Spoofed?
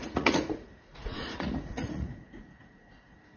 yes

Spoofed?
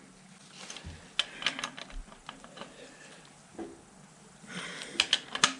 no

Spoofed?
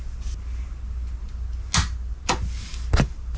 no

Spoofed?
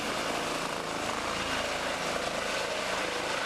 no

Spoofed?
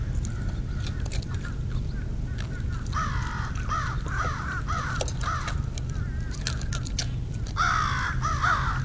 no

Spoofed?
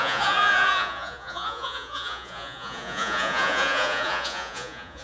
yes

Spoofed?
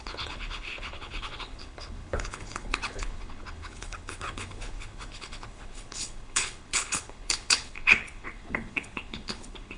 yes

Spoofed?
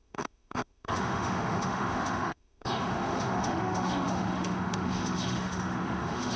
yes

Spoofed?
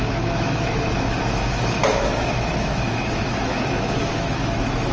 yes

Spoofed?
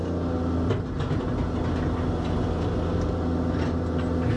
no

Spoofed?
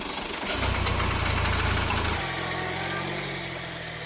no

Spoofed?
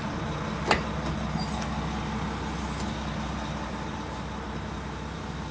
no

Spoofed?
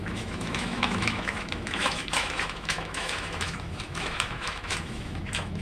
yes